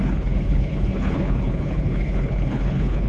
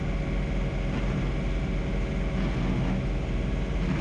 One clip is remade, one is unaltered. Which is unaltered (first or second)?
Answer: second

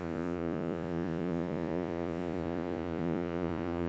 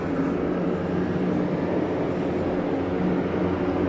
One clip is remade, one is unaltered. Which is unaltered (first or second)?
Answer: second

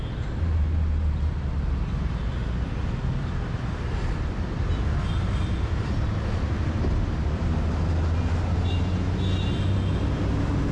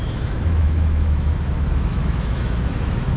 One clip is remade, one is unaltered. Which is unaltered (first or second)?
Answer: first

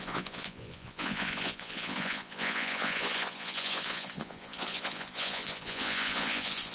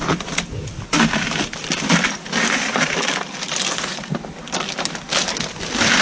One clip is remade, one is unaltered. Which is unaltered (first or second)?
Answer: second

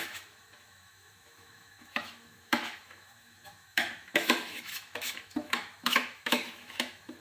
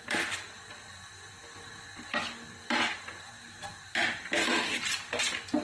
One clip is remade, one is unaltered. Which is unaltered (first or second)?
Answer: second